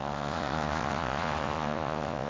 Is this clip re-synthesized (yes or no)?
yes